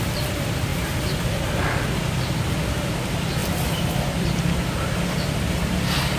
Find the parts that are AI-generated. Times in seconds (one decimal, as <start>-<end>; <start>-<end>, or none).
0.0-0.7; 1.3-6.2